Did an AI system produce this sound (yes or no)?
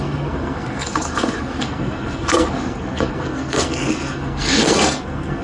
yes